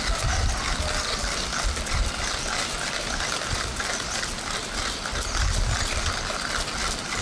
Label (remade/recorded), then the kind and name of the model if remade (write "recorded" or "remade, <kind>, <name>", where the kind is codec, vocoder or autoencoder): recorded